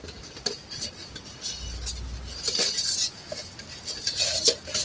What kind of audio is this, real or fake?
real